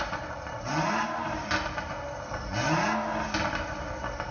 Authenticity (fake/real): real